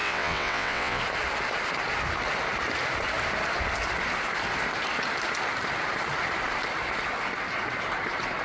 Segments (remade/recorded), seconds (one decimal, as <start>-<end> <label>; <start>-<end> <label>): 0.0-1.0 remade; 1.0-8.4 recorded